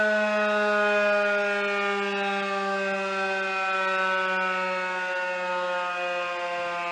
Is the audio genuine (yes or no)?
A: yes